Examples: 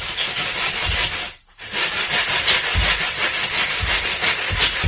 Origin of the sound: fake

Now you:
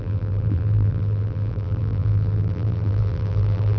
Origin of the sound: fake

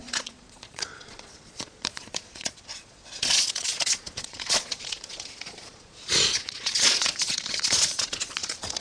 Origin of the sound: fake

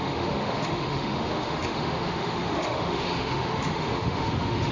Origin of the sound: fake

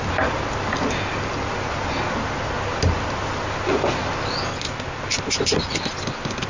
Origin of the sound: real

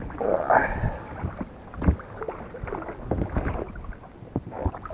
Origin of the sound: real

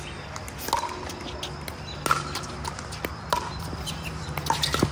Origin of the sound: real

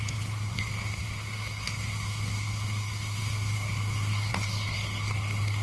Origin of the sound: fake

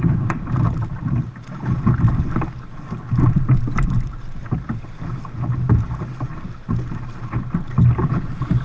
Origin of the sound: real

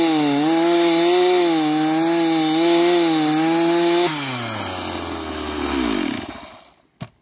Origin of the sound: real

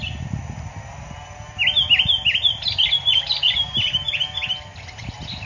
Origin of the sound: real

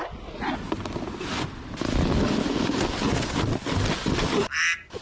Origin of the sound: real